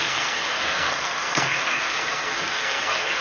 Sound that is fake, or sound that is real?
fake